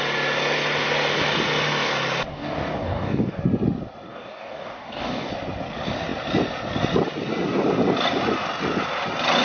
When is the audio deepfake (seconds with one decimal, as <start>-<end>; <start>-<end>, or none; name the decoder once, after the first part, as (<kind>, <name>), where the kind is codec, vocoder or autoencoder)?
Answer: 2.3-3.4 (codec, DAC); 4.1-5.3